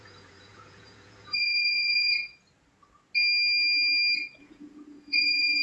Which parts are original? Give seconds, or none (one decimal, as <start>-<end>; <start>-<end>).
2.3-4.4